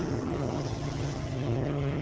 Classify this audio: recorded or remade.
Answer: remade